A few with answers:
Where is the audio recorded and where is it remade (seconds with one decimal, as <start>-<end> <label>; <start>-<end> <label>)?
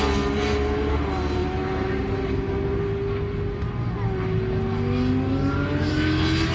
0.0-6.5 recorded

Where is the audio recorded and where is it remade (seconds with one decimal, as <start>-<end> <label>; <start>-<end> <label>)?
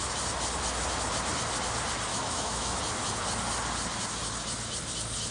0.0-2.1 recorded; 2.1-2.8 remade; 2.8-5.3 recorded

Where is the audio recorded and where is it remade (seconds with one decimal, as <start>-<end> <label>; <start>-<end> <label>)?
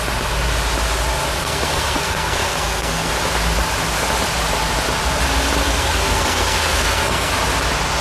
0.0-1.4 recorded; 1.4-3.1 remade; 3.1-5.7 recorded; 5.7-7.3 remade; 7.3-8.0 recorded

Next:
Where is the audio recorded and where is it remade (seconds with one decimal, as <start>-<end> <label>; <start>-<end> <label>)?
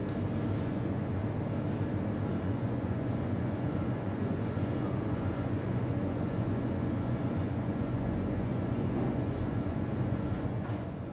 0.0-0.6 recorded; 0.6-1.2 remade; 1.2-2.3 recorded; 2.3-11.1 remade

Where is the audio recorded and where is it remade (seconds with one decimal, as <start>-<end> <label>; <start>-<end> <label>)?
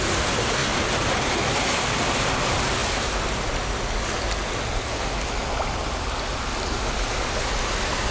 0.0-8.1 recorded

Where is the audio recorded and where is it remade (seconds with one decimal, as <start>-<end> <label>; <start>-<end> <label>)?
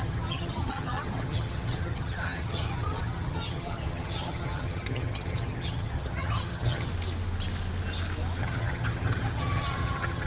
0.0-6.9 remade; 6.9-8.4 recorded; 8.4-10.3 remade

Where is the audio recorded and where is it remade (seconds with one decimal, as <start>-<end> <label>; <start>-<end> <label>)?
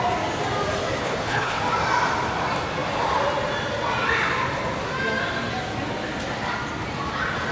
0.0-1.0 recorded; 1.0-1.6 remade; 1.6-7.5 recorded